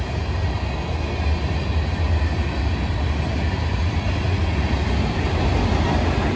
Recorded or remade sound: recorded